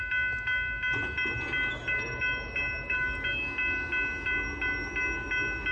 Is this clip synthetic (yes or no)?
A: no